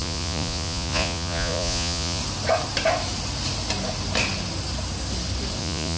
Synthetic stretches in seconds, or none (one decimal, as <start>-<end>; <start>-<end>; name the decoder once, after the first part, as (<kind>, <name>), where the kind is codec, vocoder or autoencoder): 0.0-2.2 (vocoder, Vocos); 5.6-6.0